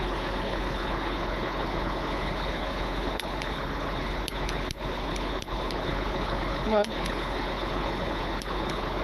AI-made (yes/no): yes